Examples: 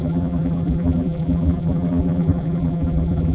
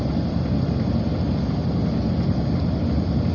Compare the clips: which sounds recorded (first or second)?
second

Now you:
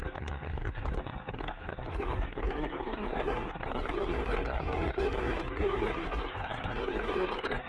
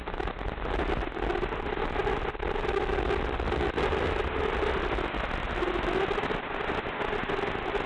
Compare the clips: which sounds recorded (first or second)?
second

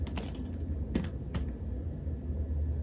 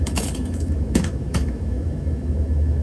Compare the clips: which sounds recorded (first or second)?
first